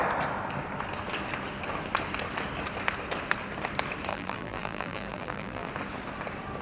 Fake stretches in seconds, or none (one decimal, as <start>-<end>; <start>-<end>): 4.1-5.7